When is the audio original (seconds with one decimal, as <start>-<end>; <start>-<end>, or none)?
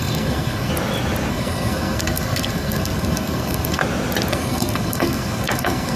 0.7-1.3; 3.8-4.3